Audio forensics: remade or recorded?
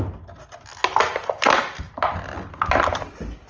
recorded